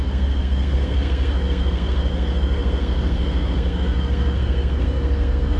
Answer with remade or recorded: remade